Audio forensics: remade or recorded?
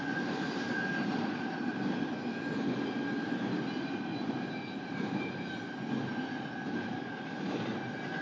recorded